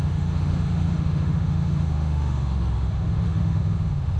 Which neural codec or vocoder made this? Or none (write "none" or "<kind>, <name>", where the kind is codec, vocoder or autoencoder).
autoencoder, DAC-VAE